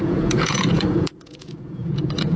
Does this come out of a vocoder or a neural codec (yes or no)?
yes